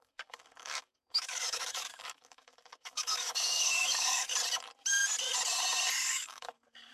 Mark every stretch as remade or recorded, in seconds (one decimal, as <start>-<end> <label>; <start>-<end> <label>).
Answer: 0.0-4.3 remade; 4.3-6.1 recorded; 6.1-6.9 remade